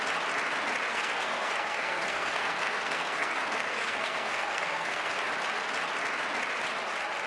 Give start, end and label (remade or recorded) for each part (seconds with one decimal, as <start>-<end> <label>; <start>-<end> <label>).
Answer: 0.0-0.9 recorded; 0.9-5.1 remade; 5.1-7.3 recorded